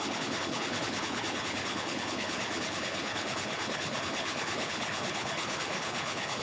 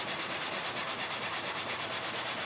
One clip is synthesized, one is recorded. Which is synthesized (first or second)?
first